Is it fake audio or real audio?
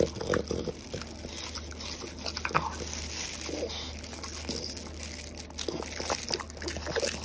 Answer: real